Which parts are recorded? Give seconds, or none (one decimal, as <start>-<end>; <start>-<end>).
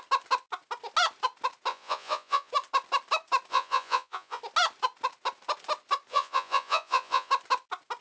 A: 0.0-1.7; 2.5-3.5; 4.4-6.1; 7.3-8.0